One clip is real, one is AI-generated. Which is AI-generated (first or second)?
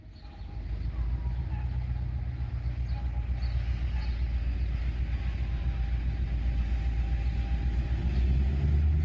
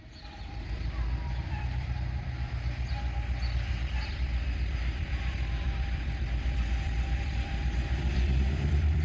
second